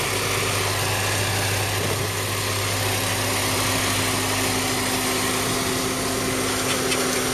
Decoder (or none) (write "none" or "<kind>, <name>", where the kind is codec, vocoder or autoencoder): none